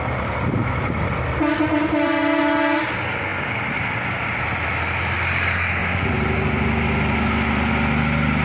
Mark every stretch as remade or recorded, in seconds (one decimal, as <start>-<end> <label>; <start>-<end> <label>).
0.0-0.6 recorded; 0.6-2.4 remade; 2.4-8.4 recorded